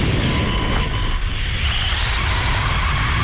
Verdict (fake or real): real